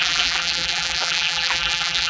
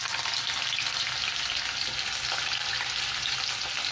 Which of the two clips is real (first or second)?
second